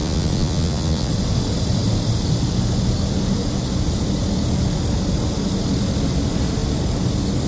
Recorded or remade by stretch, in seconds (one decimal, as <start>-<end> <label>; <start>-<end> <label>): 0.0-1.1 remade; 1.1-7.5 recorded

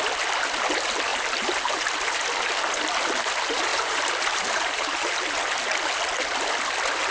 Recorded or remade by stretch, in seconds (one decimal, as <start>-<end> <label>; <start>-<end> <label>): 0.0-1.1 recorded; 1.1-1.9 remade; 1.9-3.7 recorded; 3.7-5.1 remade; 5.1-7.1 recorded

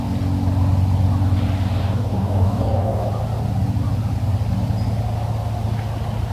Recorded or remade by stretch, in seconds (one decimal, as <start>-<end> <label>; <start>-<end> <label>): 0.0-1.8 recorded; 1.8-3.1 remade; 3.1-6.3 recorded

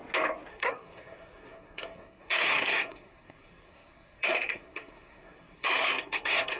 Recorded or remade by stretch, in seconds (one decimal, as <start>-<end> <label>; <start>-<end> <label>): 0.0-0.5 recorded; 0.5-6.6 remade

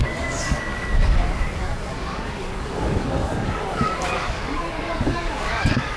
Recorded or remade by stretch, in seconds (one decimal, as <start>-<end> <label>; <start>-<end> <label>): 0.0-6.0 remade

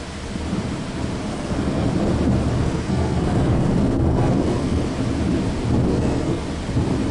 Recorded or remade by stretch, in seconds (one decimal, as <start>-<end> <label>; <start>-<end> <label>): 0.0-1.3 recorded; 1.3-1.9 remade; 1.9-2.6 recorded; 2.6-4.8 remade; 4.8-5.9 recorded; 5.9-6.4 remade; 6.4-7.1 recorded

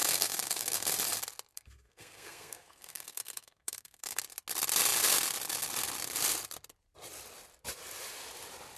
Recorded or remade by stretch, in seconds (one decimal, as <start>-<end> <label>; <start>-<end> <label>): 0.0-0.9 remade; 0.9-1.5 recorded; 1.5-4.2 remade; 4.2-8.8 recorded